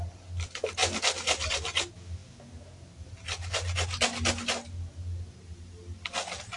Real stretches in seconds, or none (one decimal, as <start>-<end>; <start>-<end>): 0.0-6.6

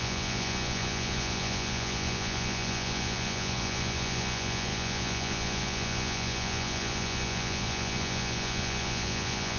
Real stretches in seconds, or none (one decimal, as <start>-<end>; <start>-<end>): none

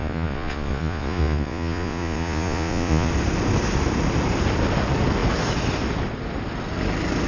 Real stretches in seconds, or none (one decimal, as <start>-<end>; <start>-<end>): 3.1-7.3

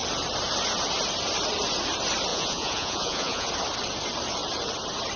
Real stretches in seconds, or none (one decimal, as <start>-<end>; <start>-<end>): 0.0-2.3; 3.5-5.2

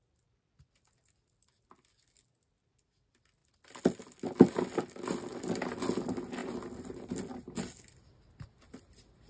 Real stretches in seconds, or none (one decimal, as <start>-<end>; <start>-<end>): 0.0-9.3

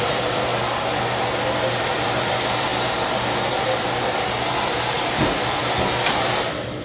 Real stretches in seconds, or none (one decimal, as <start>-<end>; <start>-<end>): 0.5-1.8; 2.7-6.1

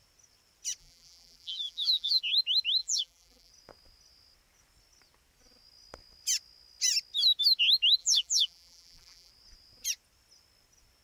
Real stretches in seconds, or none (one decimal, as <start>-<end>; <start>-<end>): 0.0-0.8; 2.2-2.8; 3.5-8.0; 9.3-11.0